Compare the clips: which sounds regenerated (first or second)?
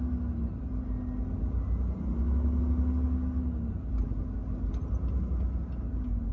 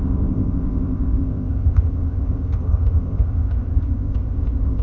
second